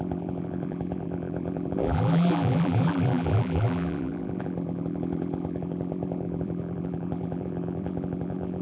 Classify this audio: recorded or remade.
remade